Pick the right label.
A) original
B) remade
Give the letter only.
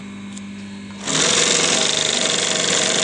A